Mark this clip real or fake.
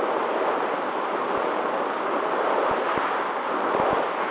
real